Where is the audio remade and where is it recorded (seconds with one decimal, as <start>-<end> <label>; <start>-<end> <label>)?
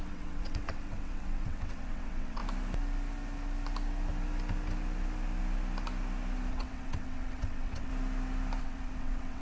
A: 0.0-2.4 remade; 2.4-6.5 recorded; 6.5-7.9 remade; 7.9-8.6 recorded; 8.6-9.4 remade